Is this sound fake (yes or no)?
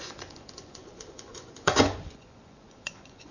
yes